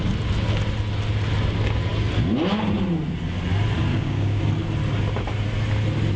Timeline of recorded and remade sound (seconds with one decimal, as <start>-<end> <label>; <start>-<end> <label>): 0.0-3.9 recorded; 3.9-4.4 remade; 4.4-6.2 recorded